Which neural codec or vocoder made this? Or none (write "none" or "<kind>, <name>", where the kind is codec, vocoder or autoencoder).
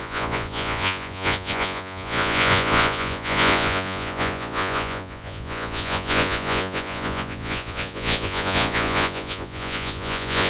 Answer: vocoder, Vocos